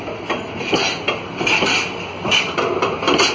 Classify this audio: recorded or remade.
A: recorded